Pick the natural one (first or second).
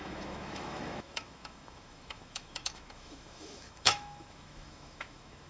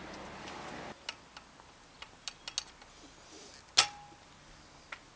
second